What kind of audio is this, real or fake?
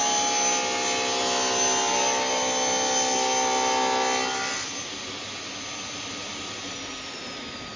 real